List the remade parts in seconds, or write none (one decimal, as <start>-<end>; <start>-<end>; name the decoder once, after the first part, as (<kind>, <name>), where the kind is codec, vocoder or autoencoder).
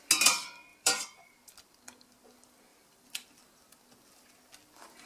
0.7-1.3 (vocoder, BigVGAN v2); 2.7-3.4